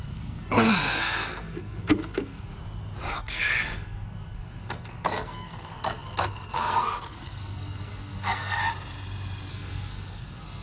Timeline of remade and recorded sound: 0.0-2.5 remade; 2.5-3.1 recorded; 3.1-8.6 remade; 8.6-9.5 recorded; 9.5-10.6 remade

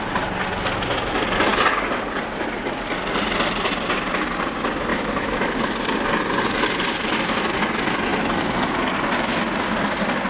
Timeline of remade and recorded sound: 0.0-4.9 recorded; 4.9-5.5 remade; 5.5-10.3 recorded

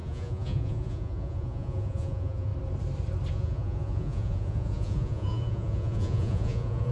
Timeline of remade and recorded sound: 0.0-2.5 remade; 2.5-3.3 recorded; 3.3-6.9 remade

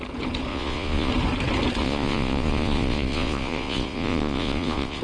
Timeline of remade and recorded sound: 0.0-0.5 recorded; 0.5-1.1 remade; 1.1-1.8 recorded; 1.8-5.0 remade

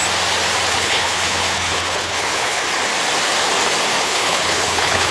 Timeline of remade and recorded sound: 0.0-0.7 recorded; 0.7-2.6 remade; 2.6-4.0 recorded; 4.0-5.1 remade

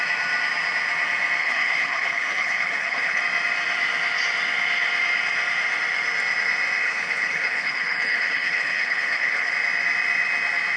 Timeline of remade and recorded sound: 0.0-1.4 recorded; 1.4-3.2 remade; 3.2-6.8 recorded; 6.8-9.5 remade; 9.5-10.8 recorded

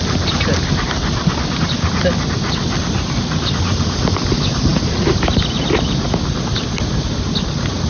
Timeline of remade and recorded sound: 0.0-7.9 recorded